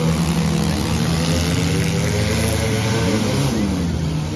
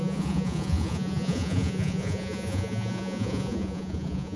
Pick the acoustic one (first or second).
first